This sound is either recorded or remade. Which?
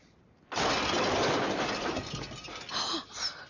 recorded